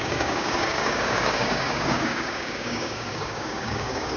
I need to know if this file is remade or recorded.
remade